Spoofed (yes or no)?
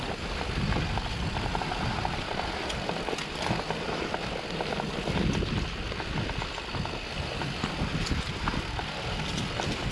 no